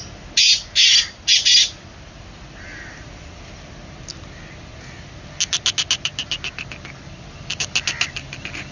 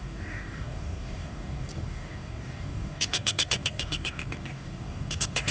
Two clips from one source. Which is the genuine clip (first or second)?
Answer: first